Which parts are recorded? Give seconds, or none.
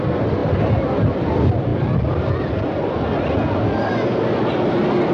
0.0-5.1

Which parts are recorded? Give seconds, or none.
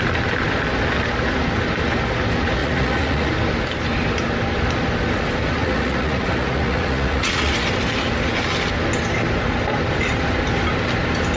0.0-2.6; 3.3-5.6; 7.5-11.4